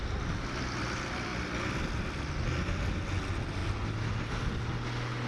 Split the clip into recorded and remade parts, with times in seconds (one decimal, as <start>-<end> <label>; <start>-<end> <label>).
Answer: 0.0-1.3 remade; 1.3-3.2 recorded; 3.2-3.6 remade; 3.6-5.3 recorded